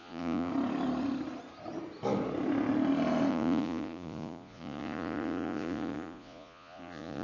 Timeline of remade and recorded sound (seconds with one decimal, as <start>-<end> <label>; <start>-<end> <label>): 0.0-0.5 remade; 0.5-3.3 recorded; 3.3-7.2 remade